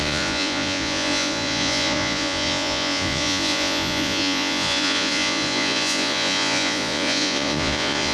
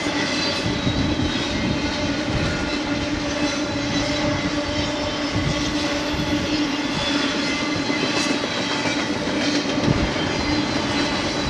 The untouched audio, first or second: second